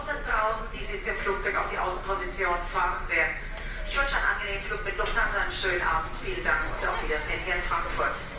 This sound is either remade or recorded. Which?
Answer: recorded